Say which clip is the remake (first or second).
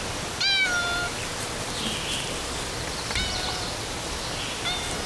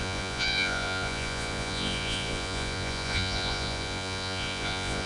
second